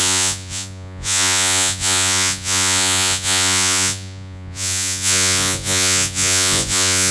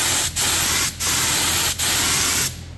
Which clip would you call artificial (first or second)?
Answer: first